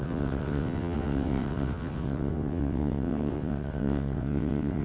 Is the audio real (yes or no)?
no